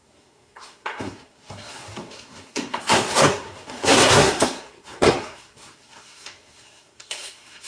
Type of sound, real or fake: fake